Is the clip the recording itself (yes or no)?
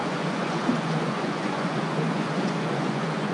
no